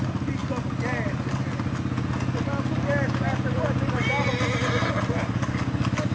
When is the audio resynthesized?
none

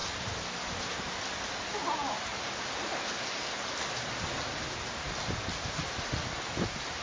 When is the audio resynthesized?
0.0-0.6 (vocoder, BigVGAN v2)